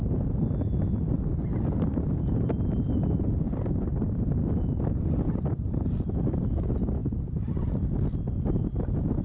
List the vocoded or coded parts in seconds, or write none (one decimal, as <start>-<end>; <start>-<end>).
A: none